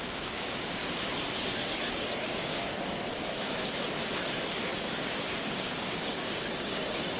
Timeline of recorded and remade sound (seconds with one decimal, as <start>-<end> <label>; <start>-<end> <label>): 0.0-0.8 remade; 0.8-1.9 recorded; 1.9-2.6 remade; 2.6-5.4 recorded; 5.4-7.2 remade